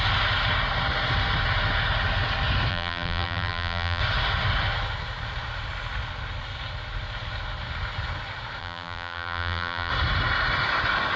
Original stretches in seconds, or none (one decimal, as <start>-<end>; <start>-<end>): 0.0-2.7; 4.0-8.6; 9.9-11.2